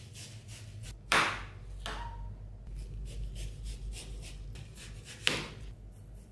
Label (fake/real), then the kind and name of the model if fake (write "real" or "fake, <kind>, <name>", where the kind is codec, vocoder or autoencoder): real